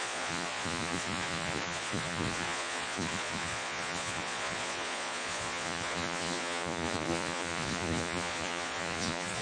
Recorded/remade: remade